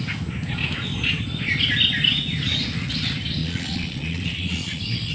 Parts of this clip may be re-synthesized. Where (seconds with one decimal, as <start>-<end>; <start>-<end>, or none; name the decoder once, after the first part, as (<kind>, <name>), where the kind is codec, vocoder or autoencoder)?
3.4-5.1 (vocoder, Vocos)